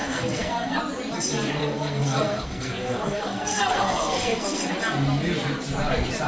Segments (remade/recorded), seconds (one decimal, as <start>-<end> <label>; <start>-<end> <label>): 0.0-0.8 remade; 0.8-1.6 recorded; 1.6-4.7 remade; 4.7-6.3 recorded